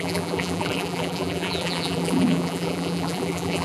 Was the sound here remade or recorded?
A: remade